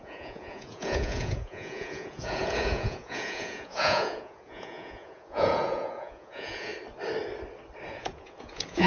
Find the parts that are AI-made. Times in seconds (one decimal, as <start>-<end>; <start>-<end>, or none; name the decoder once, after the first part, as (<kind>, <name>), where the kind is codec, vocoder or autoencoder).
0.0-6.7 (vocoder, Vocos); 7.9-8.9